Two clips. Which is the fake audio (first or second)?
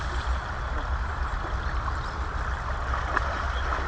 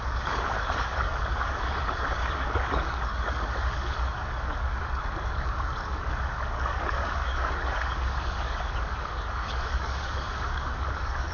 second